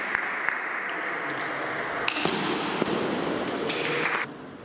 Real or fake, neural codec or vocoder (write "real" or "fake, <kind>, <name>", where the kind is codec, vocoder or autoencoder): real